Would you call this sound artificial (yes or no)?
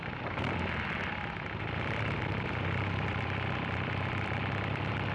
yes